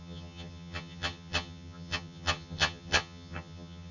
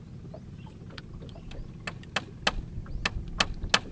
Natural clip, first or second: second